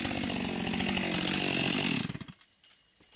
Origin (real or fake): real